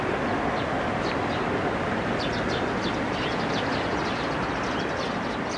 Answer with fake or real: real